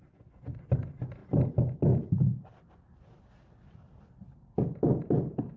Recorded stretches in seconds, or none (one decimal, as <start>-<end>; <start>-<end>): 0.0-5.6